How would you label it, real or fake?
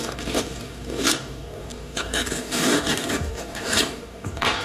fake